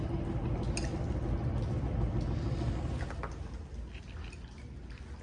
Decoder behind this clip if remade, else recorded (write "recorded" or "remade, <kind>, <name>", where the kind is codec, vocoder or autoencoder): recorded